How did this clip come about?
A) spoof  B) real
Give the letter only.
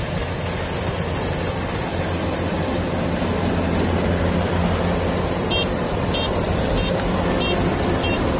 B